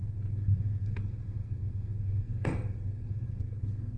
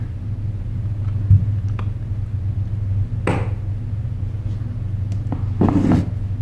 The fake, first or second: first